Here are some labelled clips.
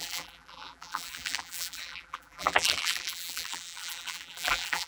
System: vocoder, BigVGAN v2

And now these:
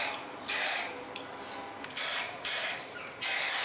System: vocoder, BigVGAN v2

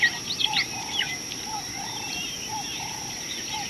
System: vocoder, BigVGAN v2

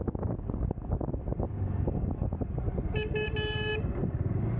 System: none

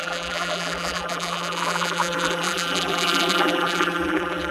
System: vocoder, BigVGAN v2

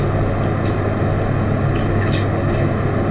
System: none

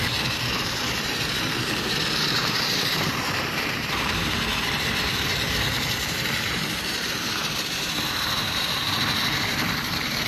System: vocoder, BigVGAN v2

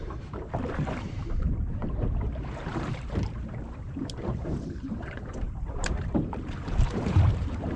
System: vocoder, BigVGAN v2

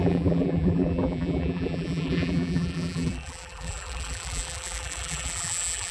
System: vocoder, BigVGAN v2